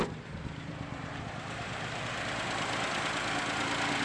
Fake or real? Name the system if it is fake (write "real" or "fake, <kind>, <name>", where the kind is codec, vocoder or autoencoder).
real